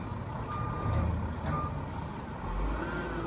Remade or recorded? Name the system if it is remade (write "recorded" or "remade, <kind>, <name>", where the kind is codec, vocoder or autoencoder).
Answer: recorded